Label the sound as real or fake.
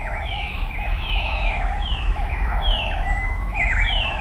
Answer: fake